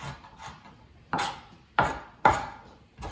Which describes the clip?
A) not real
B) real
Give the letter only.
B